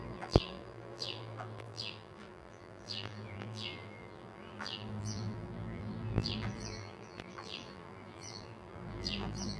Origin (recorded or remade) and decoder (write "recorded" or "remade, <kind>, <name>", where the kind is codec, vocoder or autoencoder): remade, vocoder, BigVGAN v2